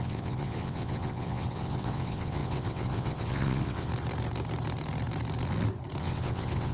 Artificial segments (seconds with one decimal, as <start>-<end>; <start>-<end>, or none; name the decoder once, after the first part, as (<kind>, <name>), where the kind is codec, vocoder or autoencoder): 0.0-3.9 (vocoder, WaveNeXt); 6.0-6.7